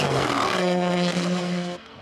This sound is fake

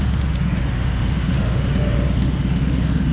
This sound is fake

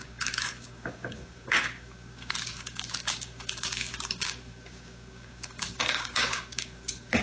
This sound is fake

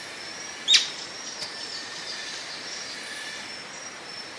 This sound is real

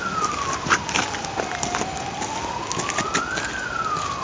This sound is real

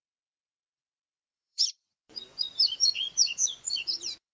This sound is fake